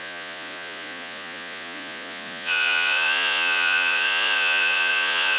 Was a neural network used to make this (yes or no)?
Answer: yes